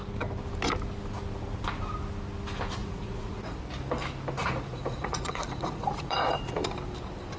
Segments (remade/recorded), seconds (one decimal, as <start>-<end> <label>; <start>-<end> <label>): 0.0-2.8 recorded; 2.8-3.6 remade; 3.6-4.4 recorded; 4.4-6.7 remade; 6.7-7.4 recorded